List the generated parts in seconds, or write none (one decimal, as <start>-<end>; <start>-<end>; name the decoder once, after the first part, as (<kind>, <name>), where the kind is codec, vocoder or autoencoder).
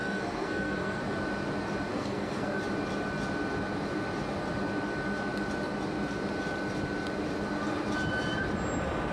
0.0-1.0 (codec, SNAC); 1.9-2.6